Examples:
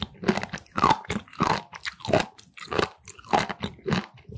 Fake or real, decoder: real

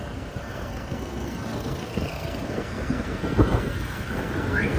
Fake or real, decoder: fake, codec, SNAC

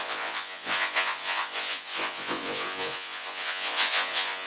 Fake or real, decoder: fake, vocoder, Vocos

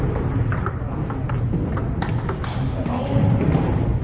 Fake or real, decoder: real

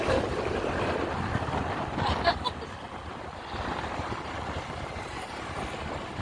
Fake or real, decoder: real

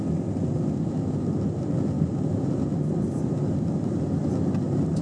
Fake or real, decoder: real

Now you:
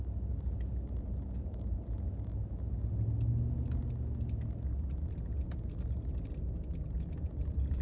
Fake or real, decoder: real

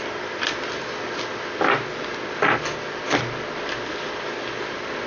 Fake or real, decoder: real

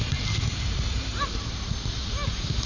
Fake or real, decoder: real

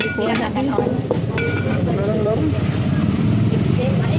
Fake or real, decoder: fake, vocoder, BigVGAN v2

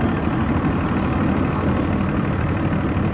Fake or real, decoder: real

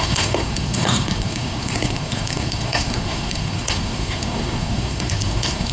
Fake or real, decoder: fake, codec, SNAC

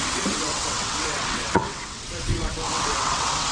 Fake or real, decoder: fake, vocoder, WaveNeXt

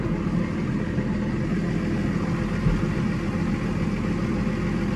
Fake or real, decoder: real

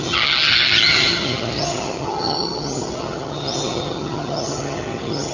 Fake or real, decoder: fake, vocoder, HiFi-GAN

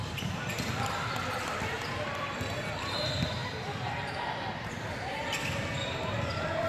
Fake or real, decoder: real